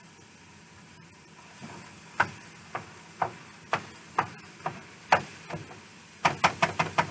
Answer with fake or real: real